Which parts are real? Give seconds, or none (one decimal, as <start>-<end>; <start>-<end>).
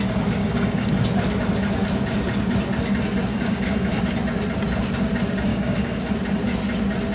0.0-0.4; 0.9-3.3; 4.0-5.5; 6.1-7.1